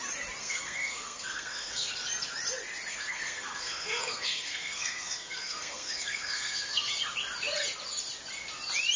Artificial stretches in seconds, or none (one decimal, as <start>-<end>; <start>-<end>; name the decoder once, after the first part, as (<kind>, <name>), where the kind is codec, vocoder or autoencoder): 0.4-1.9 (codec, SNAC); 2.9-6.9